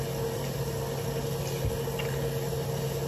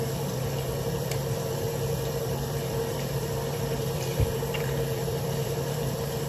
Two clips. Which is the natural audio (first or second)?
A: first